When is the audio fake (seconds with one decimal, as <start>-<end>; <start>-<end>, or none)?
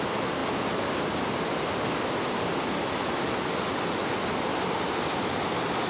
none